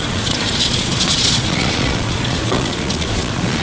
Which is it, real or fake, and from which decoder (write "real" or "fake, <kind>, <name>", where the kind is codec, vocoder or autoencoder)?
fake, vocoder, Vocos